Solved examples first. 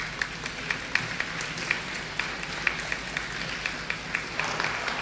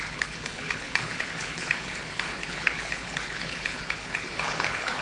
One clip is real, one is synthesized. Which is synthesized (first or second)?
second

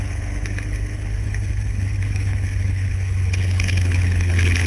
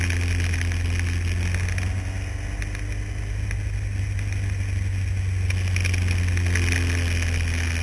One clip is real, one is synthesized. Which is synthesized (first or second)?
first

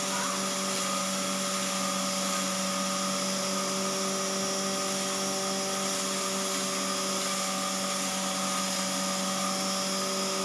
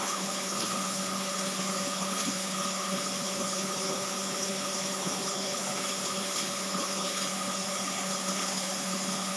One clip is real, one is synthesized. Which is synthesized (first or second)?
second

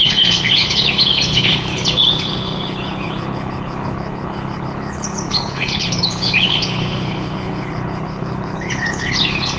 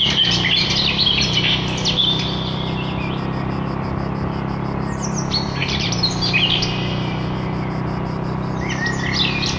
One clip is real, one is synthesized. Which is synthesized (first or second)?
first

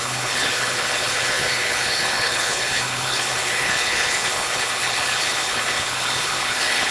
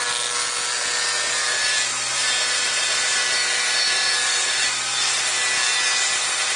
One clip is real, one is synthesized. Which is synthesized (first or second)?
first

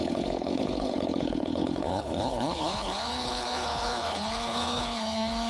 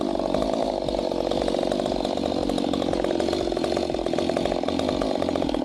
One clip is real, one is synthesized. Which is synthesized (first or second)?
first